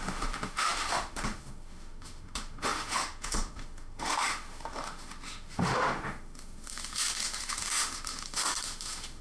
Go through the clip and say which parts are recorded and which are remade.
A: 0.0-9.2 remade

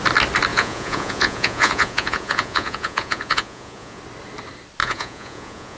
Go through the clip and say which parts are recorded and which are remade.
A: 0.0-0.5 recorded; 0.5-4.0 remade; 4.0-4.8 recorded; 4.8-5.8 remade

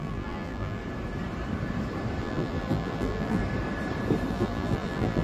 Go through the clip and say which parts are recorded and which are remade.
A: 0.0-0.8 remade; 0.8-2.2 recorded; 2.2-3.4 remade; 3.4-4.3 recorded; 4.3-5.2 remade

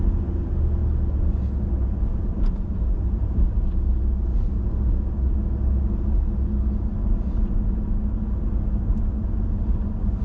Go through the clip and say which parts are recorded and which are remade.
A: 0.0-10.2 recorded

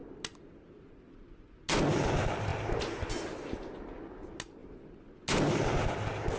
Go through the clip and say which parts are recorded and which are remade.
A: 0.0-6.4 recorded

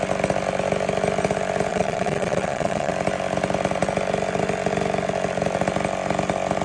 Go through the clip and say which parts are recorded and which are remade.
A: 0.0-1.7 recorded; 1.7-2.9 remade; 2.9-6.6 recorded